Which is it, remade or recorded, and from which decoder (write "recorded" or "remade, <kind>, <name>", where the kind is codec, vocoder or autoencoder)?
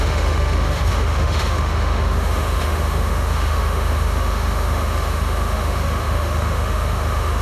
remade, autoencoder, DAC-VAE